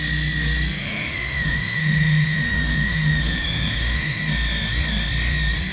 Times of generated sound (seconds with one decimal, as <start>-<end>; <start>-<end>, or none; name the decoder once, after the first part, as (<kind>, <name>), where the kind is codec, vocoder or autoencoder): 0.8-4.2 (autoencoder, DAC-VAE)